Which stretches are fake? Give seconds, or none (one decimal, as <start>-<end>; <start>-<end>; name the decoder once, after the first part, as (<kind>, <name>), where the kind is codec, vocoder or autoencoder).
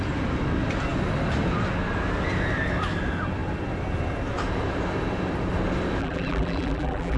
6.0-7.2 (vocoder, BigVGAN v2)